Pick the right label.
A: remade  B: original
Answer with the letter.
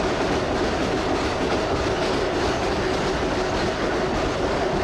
B